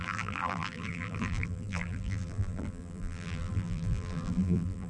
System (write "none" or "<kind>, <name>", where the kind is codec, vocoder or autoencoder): vocoder, BigVGAN v2